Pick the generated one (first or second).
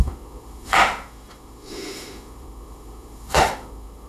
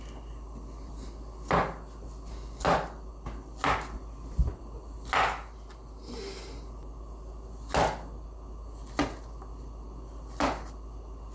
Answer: first